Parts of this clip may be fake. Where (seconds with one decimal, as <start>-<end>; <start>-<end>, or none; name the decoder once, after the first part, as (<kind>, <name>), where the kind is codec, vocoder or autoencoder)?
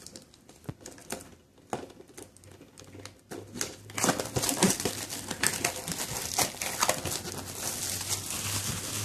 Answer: none